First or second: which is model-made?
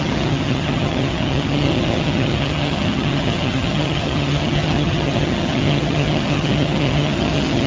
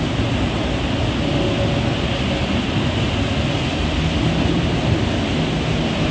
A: first